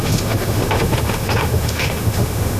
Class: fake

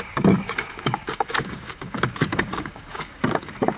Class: fake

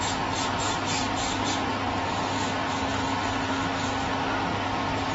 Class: real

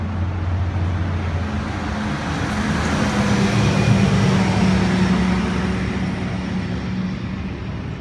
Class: real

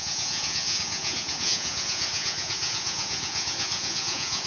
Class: fake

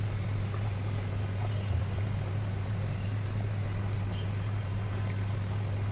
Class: real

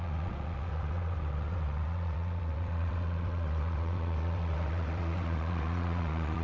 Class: fake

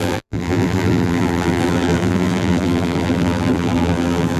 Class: fake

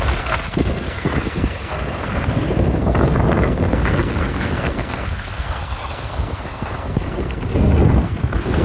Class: fake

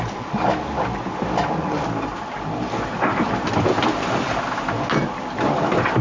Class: real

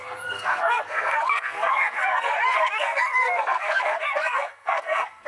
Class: fake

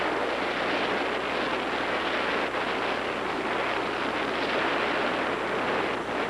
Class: real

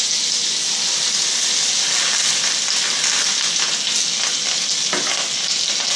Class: real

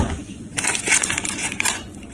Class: fake